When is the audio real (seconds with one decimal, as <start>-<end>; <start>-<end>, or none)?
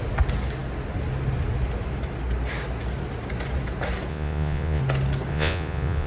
0.0-4.1; 4.8-5.3